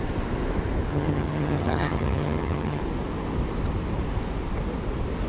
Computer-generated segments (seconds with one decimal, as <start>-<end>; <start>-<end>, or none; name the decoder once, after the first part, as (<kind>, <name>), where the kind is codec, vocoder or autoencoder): 0.9-2.8 (vocoder, HiFi-GAN)